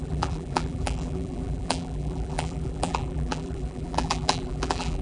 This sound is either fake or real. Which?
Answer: fake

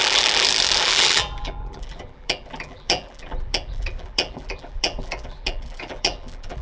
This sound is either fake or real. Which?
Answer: fake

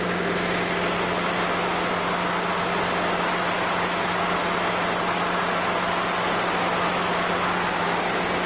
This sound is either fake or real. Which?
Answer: real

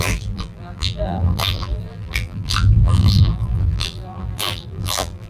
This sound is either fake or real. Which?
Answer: fake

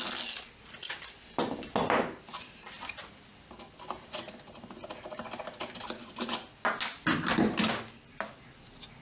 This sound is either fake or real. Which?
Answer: real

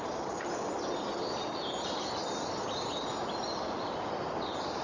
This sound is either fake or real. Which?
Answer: fake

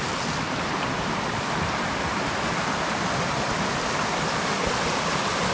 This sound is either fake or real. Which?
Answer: real